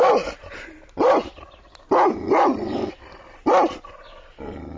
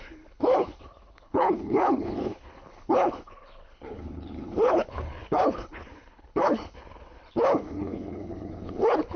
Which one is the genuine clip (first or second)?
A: first